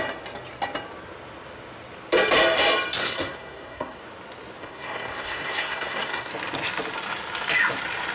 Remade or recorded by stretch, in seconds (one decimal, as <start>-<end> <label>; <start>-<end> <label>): 0.0-3.0 recorded; 3.0-4.0 remade; 4.0-4.6 recorded; 4.6-6.3 remade; 6.3-8.1 recorded